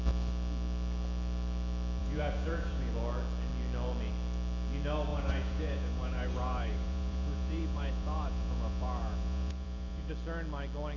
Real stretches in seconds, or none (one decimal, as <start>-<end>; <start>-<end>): 0.0-2.0; 2.9-5.1; 10.1-11.0